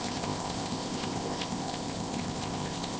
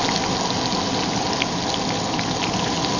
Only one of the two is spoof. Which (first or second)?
first